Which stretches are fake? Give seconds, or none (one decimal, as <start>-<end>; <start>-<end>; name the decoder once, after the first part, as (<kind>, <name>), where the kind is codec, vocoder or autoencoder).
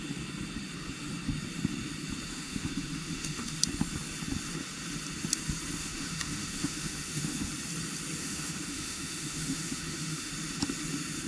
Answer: 2.3-3.6 (autoencoder, DAC-VAE); 5.8-7.5; 8.2-10.3